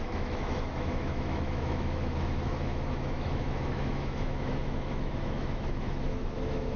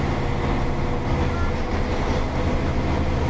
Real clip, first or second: second